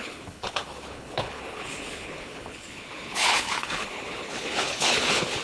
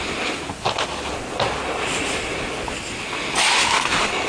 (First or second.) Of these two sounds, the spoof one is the first